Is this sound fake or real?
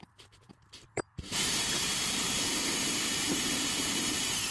fake